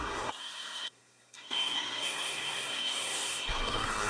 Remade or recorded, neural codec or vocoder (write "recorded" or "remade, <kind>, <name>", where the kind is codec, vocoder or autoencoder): remade, codec, SNAC